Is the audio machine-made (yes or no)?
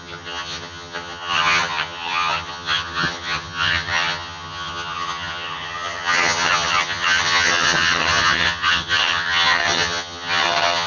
yes